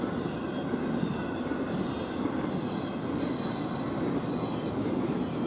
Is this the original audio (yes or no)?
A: yes